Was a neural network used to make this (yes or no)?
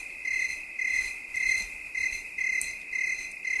no